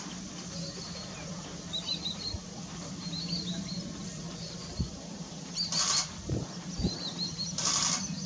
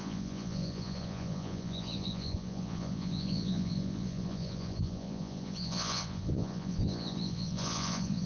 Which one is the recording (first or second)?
first